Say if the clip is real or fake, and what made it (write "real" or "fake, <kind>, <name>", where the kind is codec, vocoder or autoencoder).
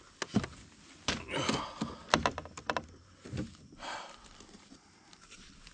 real